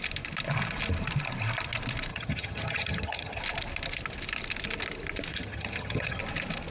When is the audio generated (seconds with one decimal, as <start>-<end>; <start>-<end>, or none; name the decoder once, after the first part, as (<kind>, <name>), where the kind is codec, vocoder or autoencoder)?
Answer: 2.1-3.4 (vocoder, HiFi-GAN); 5.3-6.2

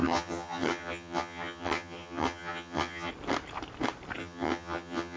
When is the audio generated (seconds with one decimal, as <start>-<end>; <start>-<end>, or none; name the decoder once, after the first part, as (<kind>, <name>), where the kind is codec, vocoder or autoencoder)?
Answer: 0.0-3.1 (vocoder, HiFi-GAN); 4.2-5.2